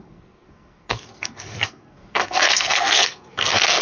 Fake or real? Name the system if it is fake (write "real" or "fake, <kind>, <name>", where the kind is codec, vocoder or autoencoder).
fake, codec, SNAC